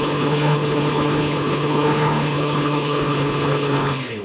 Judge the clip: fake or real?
fake